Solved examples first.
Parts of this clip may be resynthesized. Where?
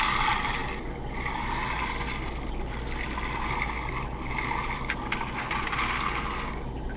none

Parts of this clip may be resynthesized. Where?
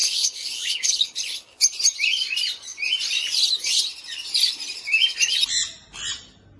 0.0-1.6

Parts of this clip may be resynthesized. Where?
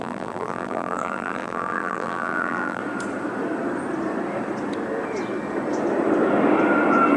0.0-2.8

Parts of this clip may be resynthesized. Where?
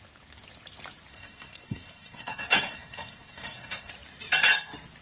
1.1-3.9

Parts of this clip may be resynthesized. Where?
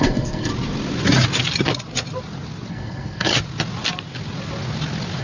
0.0-0.5; 2.7-3.3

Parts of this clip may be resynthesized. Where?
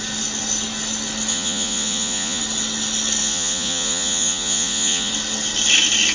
1.3-2.4; 3.2-5.1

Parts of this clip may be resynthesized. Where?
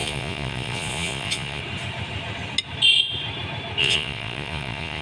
0.0-1.6; 3.8-5.0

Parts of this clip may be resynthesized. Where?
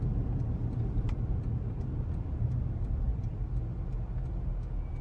3.1-3.6